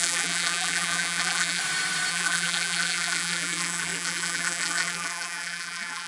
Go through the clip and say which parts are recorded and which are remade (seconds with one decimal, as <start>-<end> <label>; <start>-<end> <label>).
0.0-1.6 remade; 1.6-2.1 recorded; 2.1-6.1 remade